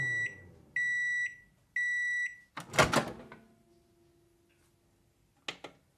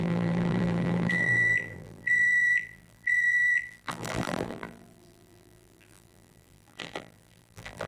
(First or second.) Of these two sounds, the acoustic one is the first